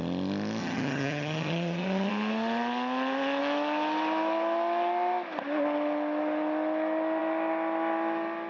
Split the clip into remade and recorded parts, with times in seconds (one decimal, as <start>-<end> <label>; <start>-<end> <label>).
0.0-0.6 recorded; 0.6-2.1 remade; 2.1-8.5 recorded